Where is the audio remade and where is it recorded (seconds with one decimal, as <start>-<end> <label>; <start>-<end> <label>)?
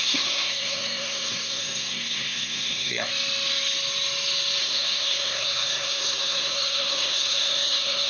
0.0-3.1 remade; 3.1-4.6 recorded; 4.6-8.1 remade